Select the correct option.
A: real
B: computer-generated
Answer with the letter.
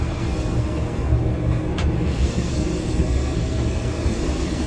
B